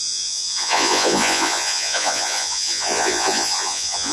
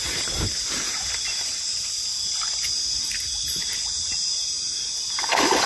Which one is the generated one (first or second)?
first